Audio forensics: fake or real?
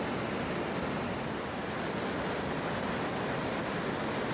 real